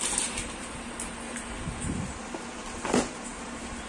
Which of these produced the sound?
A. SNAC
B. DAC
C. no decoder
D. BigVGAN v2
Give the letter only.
C